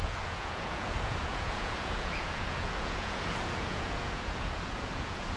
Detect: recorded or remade remade